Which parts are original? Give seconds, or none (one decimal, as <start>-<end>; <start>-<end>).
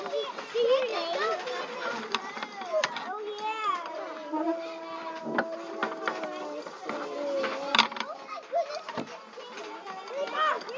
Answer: 0.0-0.9; 1.6-3.6; 5.2-10.8